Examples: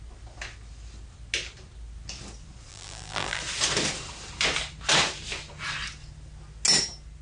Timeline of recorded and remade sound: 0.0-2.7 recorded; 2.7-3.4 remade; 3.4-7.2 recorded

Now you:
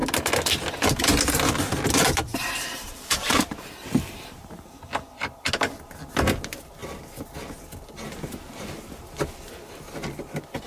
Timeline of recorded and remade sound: 0.0-2.3 recorded; 2.3-4.8 remade; 4.8-10.7 recorded

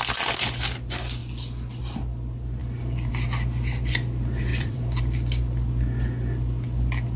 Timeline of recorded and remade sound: 0.0-4.5 recorded; 4.5-5.0 remade; 5.0-7.2 recorded

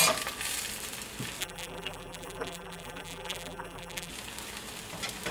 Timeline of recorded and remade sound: 0.0-1.4 recorded; 1.4-4.1 remade; 4.1-5.3 recorded

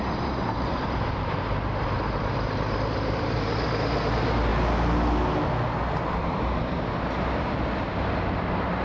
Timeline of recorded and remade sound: 0.0-4.5 remade; 4.5-6.2 recorded; 6.2-8.8 remade

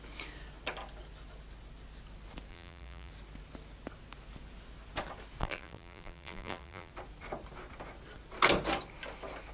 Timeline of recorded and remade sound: 0.0-2.5 recorded; 2.5-3.1 remade; 3.1-5.4 recorded; 5.4-6.9 remade; 6.9-9.5 recorded